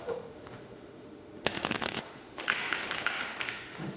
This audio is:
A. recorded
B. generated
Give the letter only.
B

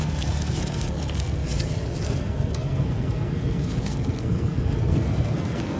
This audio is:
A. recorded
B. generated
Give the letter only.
B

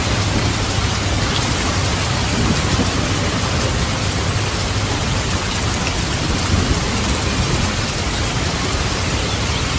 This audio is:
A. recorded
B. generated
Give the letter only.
A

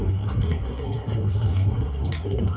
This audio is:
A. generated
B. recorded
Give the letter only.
A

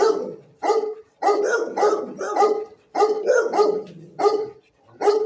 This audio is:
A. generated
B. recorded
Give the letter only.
B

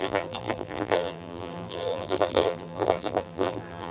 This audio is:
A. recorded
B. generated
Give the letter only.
B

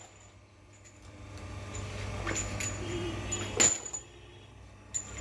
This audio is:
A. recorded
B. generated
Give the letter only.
A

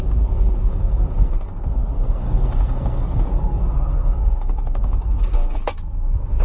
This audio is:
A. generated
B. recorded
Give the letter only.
A